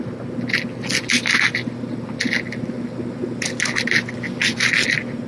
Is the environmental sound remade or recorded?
recorded